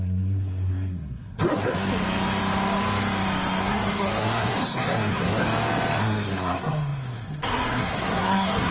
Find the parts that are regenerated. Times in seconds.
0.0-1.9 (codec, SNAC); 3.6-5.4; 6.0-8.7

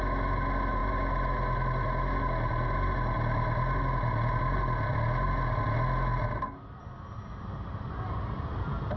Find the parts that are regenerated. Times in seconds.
none

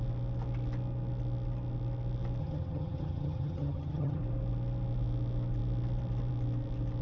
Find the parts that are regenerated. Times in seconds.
2.4-4.2 (vocoder, HiFi-GAN)